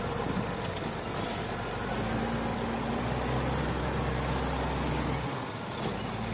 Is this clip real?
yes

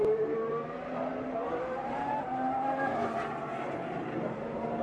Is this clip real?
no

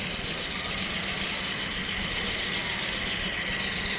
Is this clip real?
yes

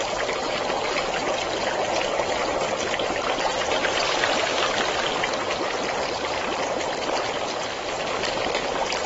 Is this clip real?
yes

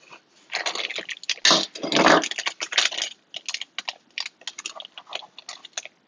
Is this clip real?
yes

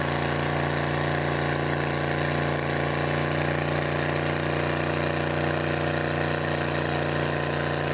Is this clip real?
yes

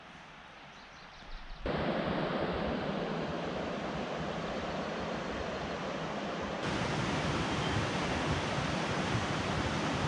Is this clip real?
no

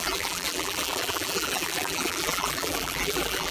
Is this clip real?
no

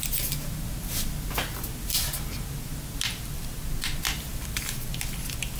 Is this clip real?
yes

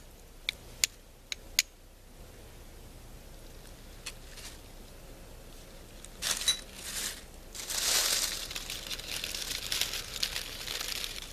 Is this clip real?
yes